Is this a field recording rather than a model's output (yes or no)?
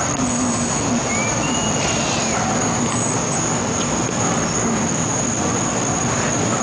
yes